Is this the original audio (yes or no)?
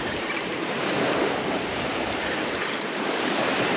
no